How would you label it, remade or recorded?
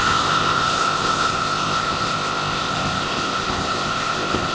remade